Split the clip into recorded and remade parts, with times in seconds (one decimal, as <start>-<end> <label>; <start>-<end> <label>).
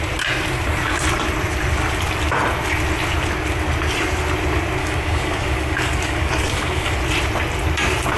0.0-4.8 recorded; 4.8-7.0 remade; 7.0-8.2 recorded